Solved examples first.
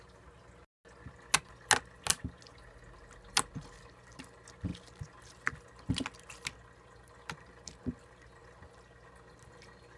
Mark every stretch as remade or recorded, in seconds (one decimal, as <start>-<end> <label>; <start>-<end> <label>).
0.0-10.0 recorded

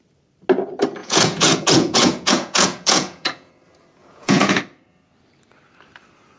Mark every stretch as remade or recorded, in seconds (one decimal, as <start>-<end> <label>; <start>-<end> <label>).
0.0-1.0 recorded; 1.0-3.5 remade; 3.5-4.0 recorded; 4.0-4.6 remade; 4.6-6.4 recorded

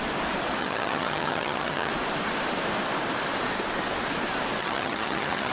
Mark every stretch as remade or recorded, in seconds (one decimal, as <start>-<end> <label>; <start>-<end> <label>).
0.0-0.6 recorded; 0.6-1.9 remade; 1.9-4.6 recorded; 4.6-5.5 remade

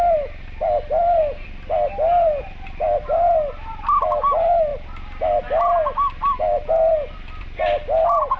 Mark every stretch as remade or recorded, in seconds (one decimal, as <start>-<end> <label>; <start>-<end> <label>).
0.0-8.4 recorded